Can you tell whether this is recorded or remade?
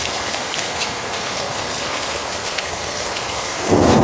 remade